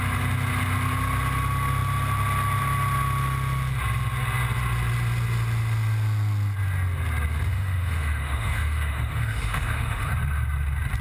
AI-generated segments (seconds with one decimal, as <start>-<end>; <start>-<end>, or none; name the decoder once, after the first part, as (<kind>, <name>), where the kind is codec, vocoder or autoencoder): 7.5-10.1 (autoencoder, DAC-VAE)